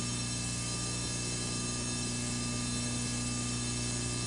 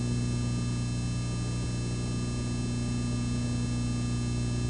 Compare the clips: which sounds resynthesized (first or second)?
first